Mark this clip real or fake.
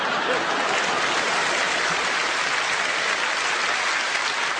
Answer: real